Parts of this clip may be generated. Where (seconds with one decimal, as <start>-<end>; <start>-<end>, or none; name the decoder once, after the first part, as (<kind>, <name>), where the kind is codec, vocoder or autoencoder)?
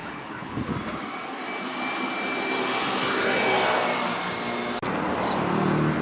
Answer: 0.0-0.7 (codec, HILCodec)